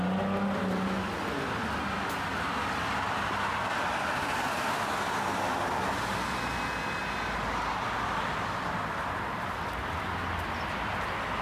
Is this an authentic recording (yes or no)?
yes